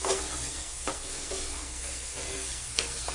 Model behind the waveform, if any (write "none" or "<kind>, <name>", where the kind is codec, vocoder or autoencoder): codec, SNAC